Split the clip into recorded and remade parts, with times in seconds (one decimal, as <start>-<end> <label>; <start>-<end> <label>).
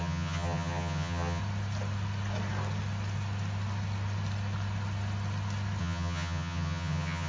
0.0-1.4 remade; 1.4-5.8 recorded; 5.8-7.3 remade